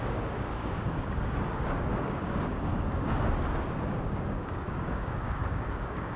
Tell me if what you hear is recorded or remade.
remade